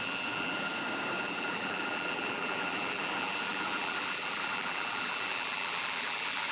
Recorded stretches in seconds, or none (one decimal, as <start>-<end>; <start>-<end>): 0.7-1.2